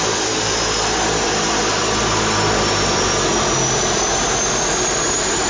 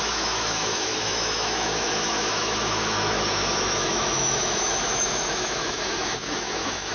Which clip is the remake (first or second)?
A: second